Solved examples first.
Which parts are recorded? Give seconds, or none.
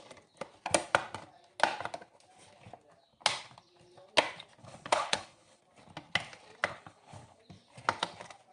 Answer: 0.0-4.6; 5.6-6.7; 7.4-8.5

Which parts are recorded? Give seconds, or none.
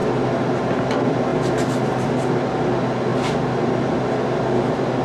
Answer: 0.0-5.0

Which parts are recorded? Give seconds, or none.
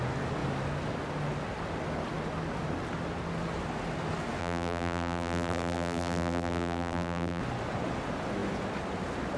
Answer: 0.0-4.4; 7.4-9.4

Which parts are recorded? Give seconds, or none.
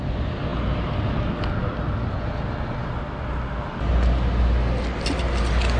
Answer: 0.0-5.8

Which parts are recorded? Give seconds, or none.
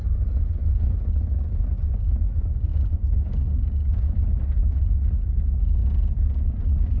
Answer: 0.0-2.7; 4.2-7.0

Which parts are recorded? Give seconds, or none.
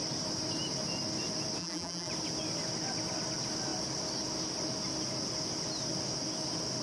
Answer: 0.0-1.6; 2.1-6.8